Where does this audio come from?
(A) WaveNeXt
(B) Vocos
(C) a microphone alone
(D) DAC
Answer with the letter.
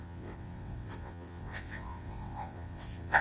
A